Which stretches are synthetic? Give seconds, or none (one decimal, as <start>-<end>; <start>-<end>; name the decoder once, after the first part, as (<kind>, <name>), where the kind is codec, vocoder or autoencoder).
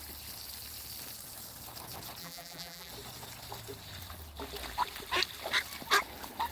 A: 2.2-2.9 (vocoder, BigVGAN v2)